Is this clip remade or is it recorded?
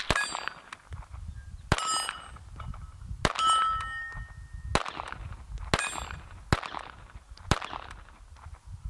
recorded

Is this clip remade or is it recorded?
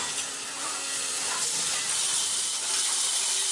recorded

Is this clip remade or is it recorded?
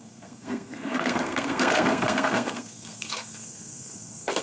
remade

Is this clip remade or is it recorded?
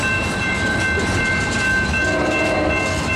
remade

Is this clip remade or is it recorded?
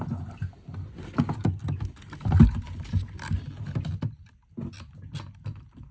recorded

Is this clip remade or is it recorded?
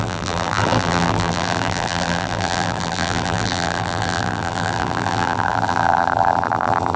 remade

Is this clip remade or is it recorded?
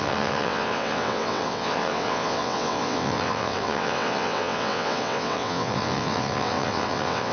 remade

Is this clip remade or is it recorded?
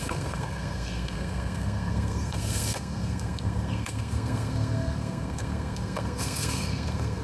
remade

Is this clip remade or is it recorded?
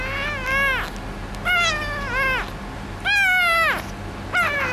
recorded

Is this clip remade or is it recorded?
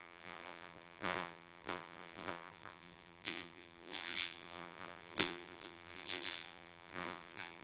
remade